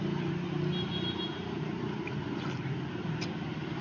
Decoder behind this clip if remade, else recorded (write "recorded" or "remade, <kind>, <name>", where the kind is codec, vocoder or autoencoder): recorded